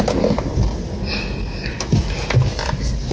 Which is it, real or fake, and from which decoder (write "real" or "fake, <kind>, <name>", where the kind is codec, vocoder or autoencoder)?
real